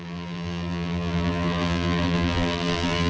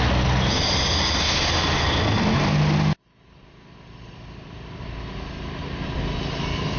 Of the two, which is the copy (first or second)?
first